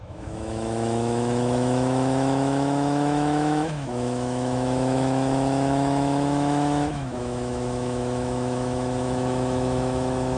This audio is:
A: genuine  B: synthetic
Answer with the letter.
B